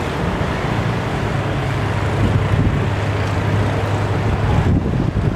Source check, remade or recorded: recorded